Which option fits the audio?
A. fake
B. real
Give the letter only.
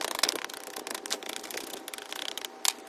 B